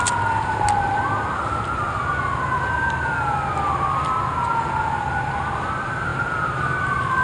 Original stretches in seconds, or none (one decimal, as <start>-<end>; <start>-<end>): 0.0-7.2